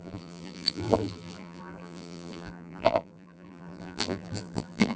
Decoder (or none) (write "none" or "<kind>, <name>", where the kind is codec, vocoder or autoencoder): vocoder, BigVGAN v2